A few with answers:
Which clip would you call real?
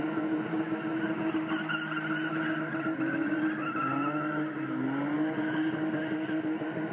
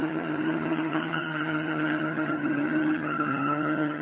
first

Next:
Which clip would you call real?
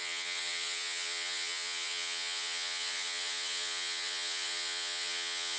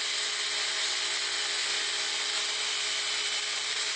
second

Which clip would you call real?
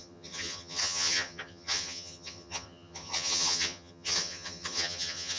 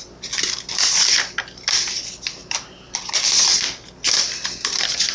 second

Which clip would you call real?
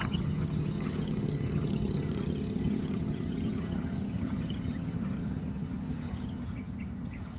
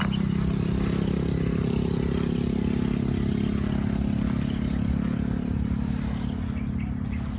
second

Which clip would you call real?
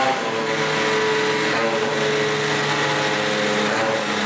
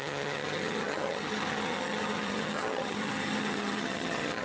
first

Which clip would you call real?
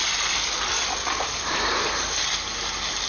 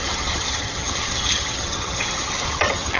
first